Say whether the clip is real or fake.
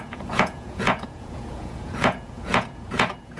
fake